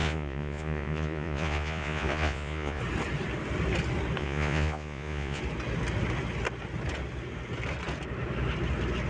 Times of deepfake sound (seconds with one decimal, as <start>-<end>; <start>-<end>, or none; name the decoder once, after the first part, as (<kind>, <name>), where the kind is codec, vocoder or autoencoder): 0.0-2.8 (vocoder, Vocos); 4.2-5.4